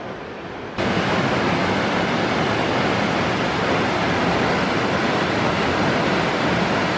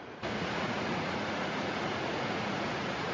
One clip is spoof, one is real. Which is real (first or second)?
first